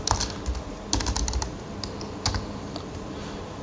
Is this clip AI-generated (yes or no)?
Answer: no